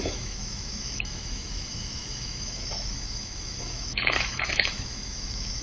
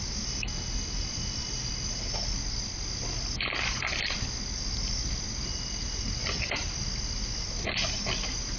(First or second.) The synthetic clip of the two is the first